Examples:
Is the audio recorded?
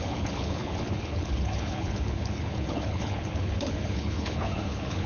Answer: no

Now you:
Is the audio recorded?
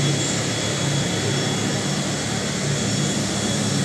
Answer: yes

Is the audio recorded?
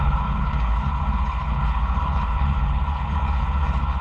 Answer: no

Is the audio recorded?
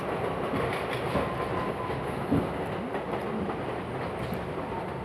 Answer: yes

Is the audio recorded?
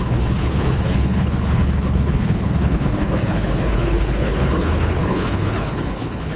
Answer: no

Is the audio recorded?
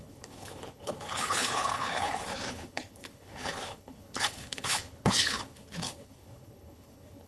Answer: no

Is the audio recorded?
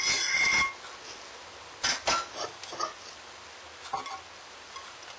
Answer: yes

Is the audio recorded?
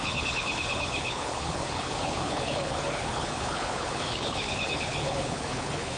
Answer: no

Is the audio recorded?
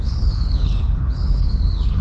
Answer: no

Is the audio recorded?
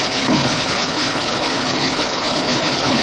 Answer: no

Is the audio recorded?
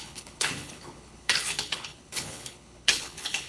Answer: no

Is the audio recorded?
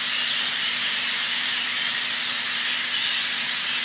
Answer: yes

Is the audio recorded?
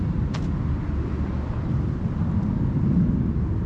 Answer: yes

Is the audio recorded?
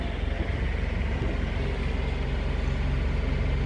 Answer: yes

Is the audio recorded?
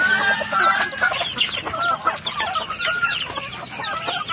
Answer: yes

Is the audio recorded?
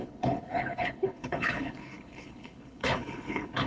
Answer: no